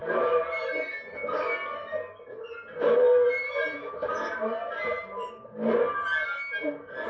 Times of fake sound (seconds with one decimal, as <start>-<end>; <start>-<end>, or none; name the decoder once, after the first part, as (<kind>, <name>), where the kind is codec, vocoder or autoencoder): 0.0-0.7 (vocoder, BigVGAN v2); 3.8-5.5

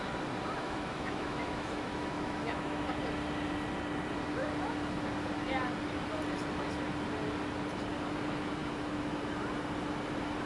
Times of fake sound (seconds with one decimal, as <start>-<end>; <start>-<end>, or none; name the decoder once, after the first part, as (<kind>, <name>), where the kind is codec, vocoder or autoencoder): 0.6-2.9 (autoencoder, DAC-VAE); 8.6-9.2

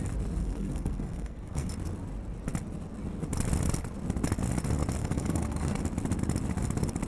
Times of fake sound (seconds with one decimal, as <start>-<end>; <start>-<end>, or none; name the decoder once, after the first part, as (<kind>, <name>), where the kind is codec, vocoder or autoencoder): 0.4-1.7 (codec, SNAC); 5.0-5.8

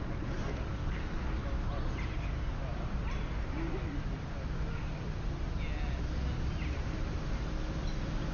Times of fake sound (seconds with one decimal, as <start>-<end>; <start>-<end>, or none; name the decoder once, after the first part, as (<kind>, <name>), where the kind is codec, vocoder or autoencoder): 0.8-1.4 (codec, DAC)